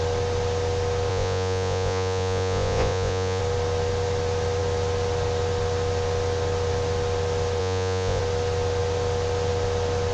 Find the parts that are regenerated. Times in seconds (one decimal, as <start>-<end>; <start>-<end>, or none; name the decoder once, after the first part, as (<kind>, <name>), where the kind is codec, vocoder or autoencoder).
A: 1.1-3.4 (vocoder, Vocos); 7.6-8.2